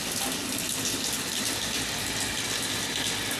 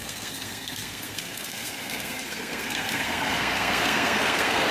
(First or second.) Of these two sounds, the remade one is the second